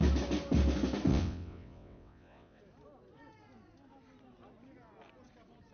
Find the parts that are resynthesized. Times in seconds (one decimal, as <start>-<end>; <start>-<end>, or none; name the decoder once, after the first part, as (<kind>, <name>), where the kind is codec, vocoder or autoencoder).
1.1-2.6 (vocoder, WaveNeXt)